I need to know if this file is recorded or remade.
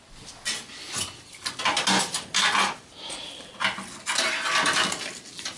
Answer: recorded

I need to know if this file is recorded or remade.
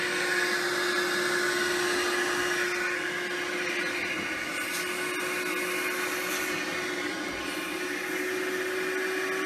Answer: recorded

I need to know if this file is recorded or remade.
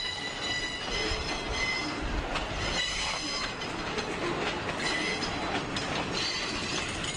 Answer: recorded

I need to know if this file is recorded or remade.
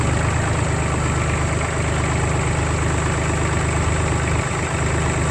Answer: recorded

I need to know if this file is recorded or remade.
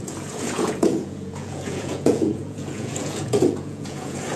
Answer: remade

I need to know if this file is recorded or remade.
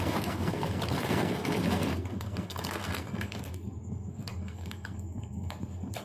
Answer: remade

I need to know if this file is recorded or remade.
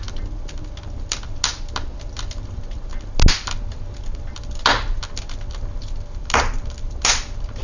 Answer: recorded